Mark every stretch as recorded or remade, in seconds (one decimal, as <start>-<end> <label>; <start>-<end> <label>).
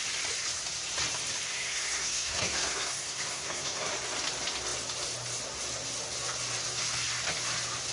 0.0-1.5 recorded; 1.5-3.9 remade; 3.9-7.9 recorded